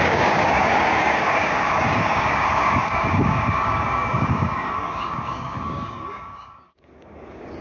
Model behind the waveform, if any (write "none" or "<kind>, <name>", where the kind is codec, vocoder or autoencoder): codec, DAC